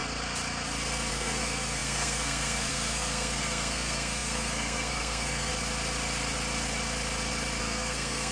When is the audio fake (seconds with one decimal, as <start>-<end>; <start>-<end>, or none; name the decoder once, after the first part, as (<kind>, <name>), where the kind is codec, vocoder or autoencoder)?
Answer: 1.1-5.5 (codec, SNAC); 7.6-8.3